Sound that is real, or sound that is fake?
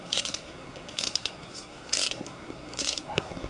fake